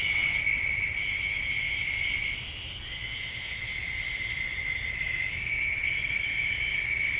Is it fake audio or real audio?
real